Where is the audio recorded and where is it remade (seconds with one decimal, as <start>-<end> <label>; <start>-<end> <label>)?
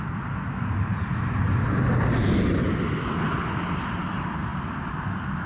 0.0-5.5 recorded